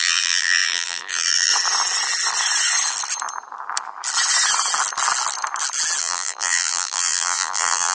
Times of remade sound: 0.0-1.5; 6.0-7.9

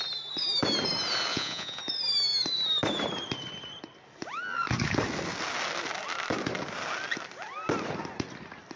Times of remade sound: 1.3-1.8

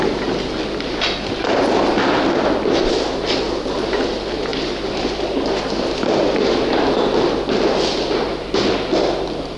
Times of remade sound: none